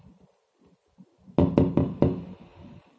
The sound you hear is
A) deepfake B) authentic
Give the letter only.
B